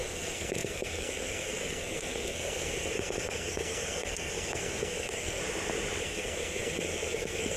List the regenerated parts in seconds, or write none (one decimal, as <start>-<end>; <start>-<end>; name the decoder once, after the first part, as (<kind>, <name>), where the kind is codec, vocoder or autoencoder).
0.0-5.4 (codec, SNAC); 6.0-7.6